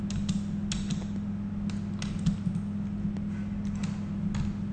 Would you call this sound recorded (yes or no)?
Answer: yes